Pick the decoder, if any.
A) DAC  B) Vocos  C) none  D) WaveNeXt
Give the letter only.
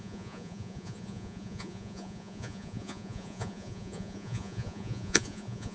B